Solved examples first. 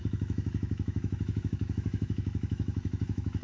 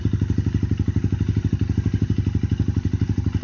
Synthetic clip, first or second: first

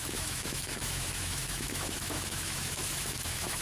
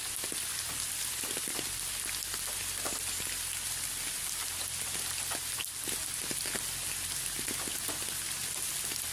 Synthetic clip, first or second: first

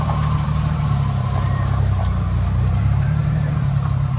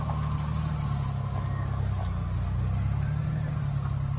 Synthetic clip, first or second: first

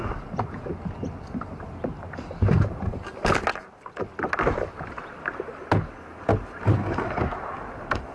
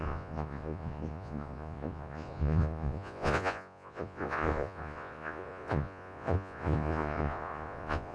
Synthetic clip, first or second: second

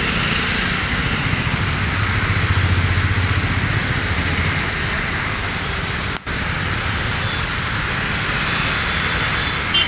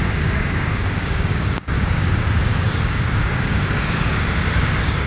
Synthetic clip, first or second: second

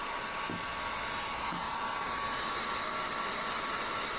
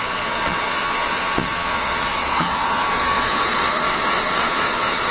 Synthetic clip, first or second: second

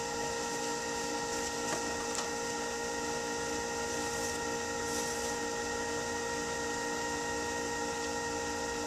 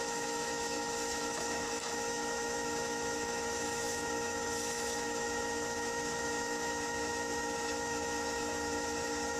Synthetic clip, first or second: second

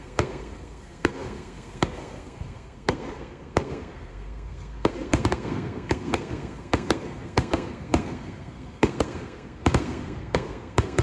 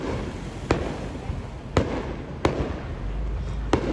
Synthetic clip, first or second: first